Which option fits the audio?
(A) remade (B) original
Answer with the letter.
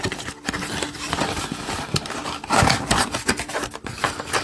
B